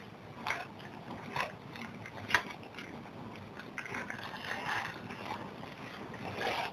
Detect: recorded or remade recorded